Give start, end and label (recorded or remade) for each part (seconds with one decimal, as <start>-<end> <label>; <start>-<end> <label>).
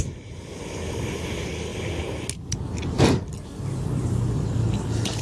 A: 0.0-5.2 recorded